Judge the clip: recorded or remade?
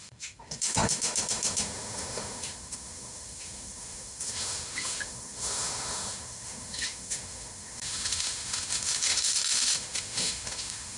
remade